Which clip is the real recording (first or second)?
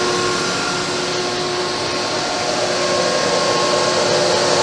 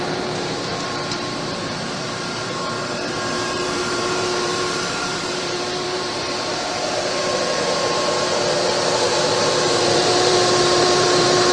first